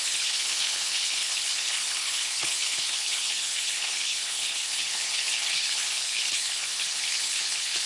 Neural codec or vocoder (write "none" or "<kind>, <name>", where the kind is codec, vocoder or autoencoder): codec, HILCodec